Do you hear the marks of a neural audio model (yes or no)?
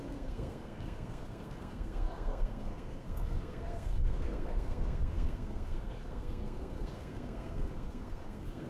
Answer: yes